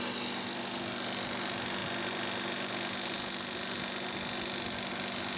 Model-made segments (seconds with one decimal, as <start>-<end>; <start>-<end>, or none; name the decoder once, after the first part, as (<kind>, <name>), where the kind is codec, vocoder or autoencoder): none